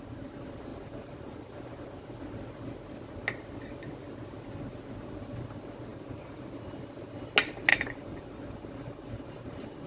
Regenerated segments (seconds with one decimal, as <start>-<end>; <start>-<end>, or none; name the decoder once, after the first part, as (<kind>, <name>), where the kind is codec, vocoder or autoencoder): 0.7-2.0 (vocoder, BigVGAN v2); 5.9-6.4; 7.7-9.9